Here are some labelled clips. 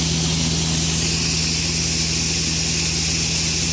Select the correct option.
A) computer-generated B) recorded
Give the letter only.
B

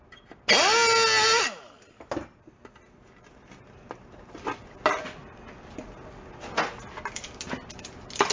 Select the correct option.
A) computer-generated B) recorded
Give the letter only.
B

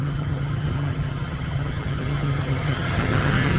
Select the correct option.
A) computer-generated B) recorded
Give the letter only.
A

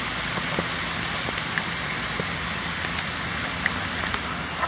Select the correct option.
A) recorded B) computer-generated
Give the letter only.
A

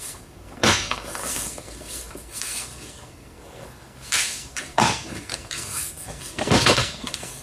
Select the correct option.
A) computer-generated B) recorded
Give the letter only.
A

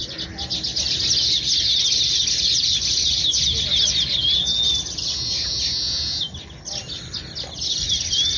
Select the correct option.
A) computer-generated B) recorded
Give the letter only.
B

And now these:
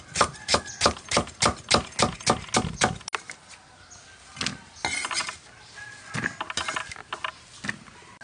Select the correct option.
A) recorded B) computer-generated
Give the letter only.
A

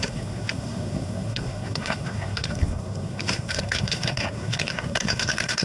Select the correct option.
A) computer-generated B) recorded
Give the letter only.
A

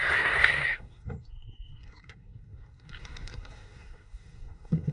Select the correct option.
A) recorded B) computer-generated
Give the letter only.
B